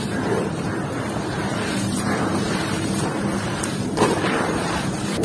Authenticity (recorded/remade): remade